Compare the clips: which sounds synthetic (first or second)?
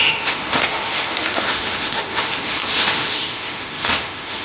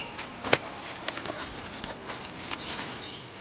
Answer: first